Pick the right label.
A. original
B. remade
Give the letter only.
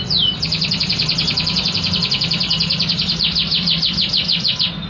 A